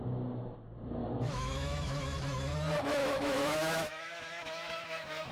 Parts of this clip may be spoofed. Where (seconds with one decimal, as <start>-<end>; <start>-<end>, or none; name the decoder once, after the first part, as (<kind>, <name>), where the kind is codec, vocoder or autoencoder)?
1.0-2.5 (autoencoder, DAC-VAE); 3.0-5.3